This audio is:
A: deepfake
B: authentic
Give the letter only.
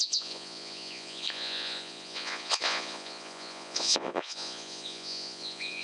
A